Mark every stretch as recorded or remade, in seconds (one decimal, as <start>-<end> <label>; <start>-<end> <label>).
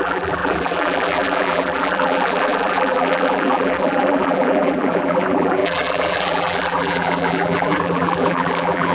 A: 0.0-8.9 remade